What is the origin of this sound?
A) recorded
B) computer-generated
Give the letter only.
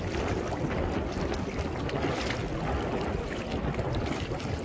A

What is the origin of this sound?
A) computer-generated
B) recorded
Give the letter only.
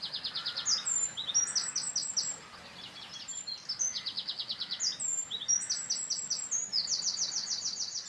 B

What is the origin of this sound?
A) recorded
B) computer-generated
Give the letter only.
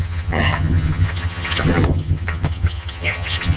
B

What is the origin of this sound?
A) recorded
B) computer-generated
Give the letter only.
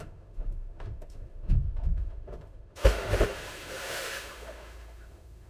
B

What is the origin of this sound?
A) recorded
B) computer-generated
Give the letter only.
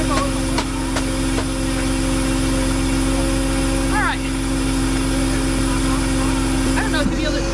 A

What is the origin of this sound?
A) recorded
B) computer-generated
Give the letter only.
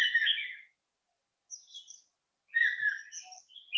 A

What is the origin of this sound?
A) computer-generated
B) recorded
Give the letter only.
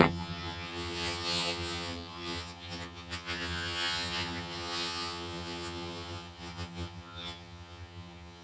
A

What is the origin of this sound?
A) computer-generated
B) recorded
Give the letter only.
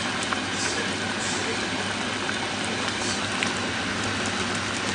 B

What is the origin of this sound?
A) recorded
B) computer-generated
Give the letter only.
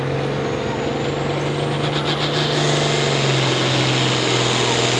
A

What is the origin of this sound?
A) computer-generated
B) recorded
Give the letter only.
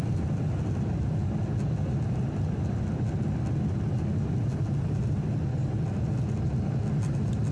B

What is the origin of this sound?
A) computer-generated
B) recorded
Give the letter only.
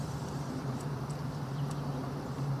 A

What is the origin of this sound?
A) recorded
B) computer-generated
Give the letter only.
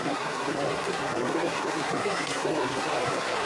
B